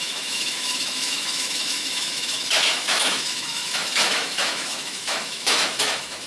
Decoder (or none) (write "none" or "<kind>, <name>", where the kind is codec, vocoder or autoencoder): autoencoder, DAC-VAE